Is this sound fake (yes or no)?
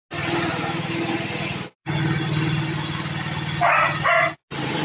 no